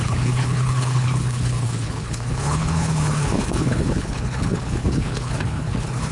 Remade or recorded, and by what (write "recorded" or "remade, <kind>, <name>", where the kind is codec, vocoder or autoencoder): remade, codec, HILCodec